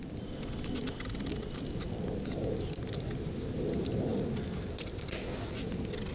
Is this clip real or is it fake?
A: real